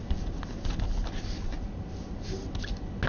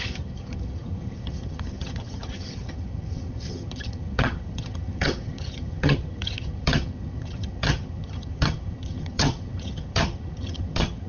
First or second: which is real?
first